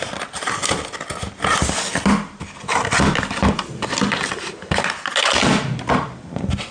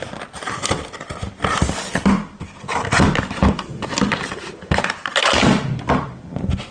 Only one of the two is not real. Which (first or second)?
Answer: second